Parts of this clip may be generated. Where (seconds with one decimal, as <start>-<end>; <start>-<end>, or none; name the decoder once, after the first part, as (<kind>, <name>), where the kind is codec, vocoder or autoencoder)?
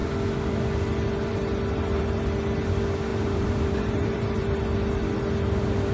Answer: 3.1-4.6 (vocoder, BigVGAN v2)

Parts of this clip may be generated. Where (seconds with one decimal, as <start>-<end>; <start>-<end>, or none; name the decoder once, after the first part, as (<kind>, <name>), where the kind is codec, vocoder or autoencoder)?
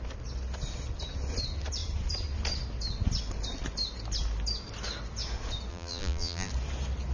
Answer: 5.7-6.5 (vocoder, BigVGAN v2)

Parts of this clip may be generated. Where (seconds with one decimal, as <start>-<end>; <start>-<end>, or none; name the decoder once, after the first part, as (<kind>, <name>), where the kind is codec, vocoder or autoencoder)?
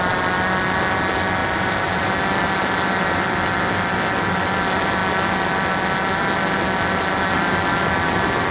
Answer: 1.4-2.1 (vocoder, BigVGAN v2)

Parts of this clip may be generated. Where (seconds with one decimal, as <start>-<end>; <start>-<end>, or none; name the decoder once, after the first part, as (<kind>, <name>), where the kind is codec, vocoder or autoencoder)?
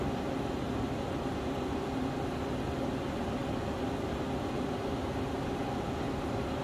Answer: none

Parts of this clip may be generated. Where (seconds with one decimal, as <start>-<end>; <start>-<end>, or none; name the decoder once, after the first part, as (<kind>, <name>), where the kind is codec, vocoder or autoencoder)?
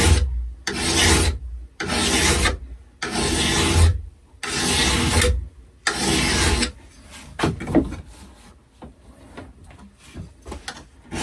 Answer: 3.9-4.4 (vocoder, BigVGAN v2)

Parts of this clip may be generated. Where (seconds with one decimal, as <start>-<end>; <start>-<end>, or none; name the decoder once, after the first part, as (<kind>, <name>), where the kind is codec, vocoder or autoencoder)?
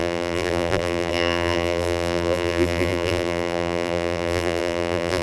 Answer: 0.0-5.2 (vocoder, BigVGAN v2)